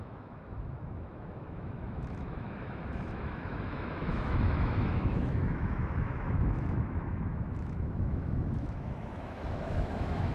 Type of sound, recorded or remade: remade